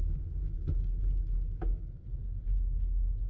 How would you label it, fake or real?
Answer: real